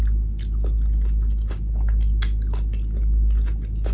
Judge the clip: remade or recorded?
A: recorded